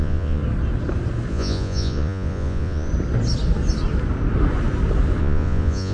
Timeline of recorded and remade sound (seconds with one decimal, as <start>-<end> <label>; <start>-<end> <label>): 0.0-0.4 remade; 0.4-1.3 recorded; 1.3-2.9 remade; 2.9-5.2 recorded; 5.2-5.9 remade